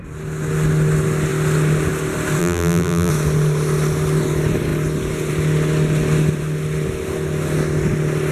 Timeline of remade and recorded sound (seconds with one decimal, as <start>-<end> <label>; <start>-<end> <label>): 0.0-2.4 recorded; 2.4-3.1 remade; 3.1-8.3 recorded